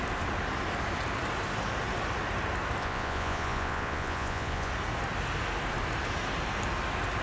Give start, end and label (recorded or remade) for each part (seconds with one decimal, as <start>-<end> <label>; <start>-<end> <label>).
0.0-2.8 recorded; 2.8-4.7 remade; 4.7-7.2 recorded